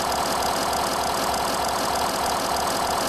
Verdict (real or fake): fake